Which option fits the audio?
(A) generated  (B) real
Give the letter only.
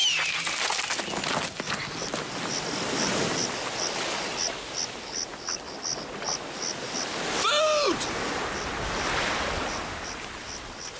B